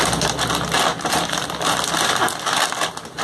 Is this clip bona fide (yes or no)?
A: yes